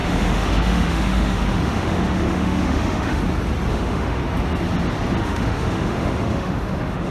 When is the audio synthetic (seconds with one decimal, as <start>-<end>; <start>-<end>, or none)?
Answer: 0.0-3.2; 3.7-4.2; 5.2-7.1